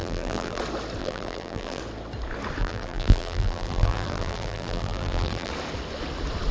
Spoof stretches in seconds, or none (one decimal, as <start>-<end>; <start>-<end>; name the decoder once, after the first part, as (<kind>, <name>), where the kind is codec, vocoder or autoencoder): 0.0-0.6 (vocoder, BigVGAN v2); 1.0-1.8; 2.6-5.5